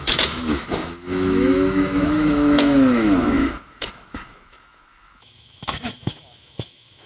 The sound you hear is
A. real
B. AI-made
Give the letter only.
B